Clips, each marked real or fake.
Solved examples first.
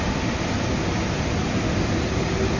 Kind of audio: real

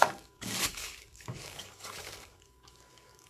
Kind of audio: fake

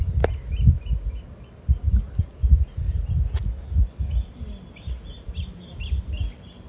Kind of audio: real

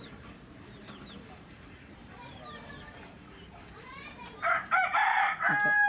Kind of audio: fake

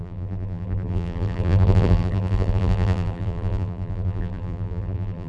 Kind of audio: fake